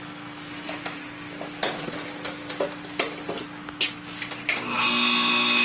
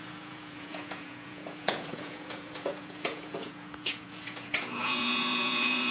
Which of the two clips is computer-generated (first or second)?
second